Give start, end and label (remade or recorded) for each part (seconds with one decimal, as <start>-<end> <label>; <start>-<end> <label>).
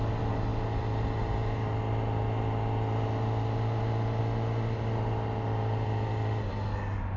0.0-7.2 recorded